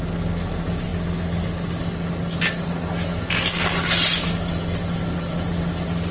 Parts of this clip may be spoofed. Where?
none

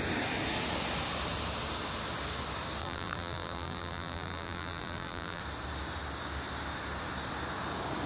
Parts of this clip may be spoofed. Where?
2.8-5.4 (vocoder, BigVGAN v2)

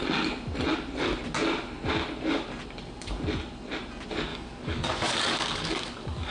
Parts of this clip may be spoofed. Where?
4.3-6.3 (codec, DAC)

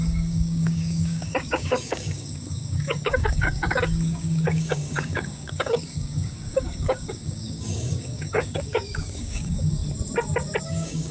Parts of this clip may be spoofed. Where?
0.0-9.8 (codec, DAC); 10.6-11.1

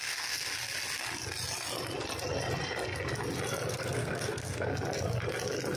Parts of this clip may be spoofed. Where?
0.0-0.5 (codec, SNAC); 3.7-4.7

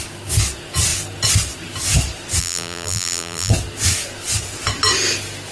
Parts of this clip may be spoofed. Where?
2.4-3.5 (vocoder, BigVGAN v2)

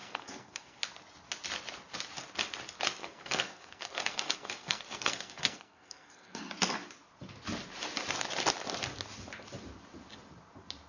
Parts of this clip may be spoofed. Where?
0.0-0.8 (codec, SNAC); 3.0-6.4

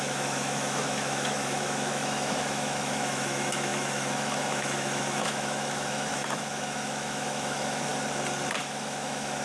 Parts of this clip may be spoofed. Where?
0.0-7.9 (autoencoder, DAC-VAE); 8.6-9.4